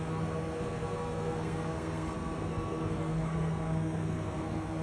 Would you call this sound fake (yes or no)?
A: yes